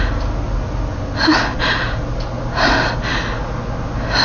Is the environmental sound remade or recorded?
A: recorded